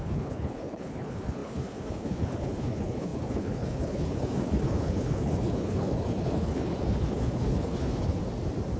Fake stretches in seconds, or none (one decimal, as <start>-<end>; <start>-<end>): 0.0-8.2